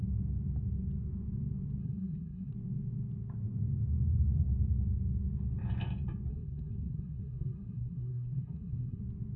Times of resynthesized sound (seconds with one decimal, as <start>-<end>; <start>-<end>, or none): 1.8-2.5; 6.3-9.0